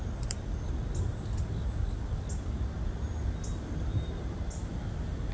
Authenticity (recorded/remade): recorded